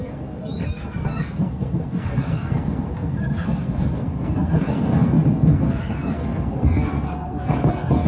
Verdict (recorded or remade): remade